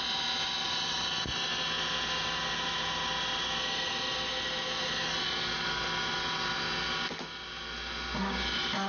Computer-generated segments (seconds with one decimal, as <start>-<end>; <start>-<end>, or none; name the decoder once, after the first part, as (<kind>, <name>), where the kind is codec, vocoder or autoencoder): none